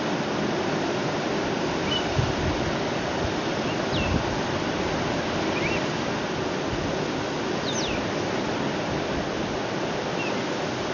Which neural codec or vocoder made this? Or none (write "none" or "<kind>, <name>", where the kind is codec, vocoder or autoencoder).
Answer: none